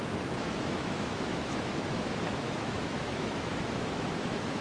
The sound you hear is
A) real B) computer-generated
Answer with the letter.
B